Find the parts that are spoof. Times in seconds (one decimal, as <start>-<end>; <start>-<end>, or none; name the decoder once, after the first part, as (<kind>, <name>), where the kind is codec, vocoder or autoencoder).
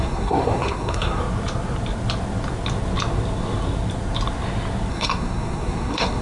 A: 0.0-1.2 (codec, SNAC); 4.9-6.2